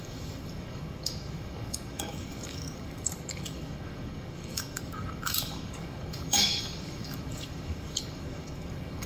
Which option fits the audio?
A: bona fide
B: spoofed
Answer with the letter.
B